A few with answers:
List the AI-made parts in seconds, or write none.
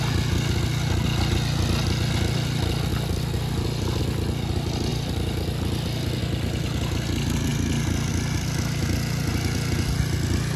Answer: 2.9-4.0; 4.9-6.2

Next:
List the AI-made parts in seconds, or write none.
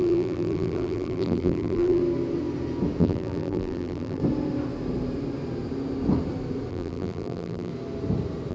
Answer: 0.0-2.0; 3.0-4.2; 6.7-7.7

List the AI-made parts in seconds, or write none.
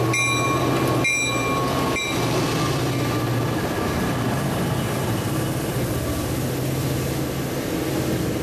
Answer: 2.0-6.0